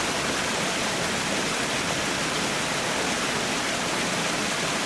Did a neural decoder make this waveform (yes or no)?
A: no